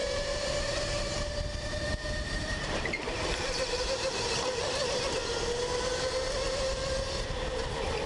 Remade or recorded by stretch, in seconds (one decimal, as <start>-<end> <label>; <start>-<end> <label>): 0.0-4.9 remade; 4.9-8.1 recorded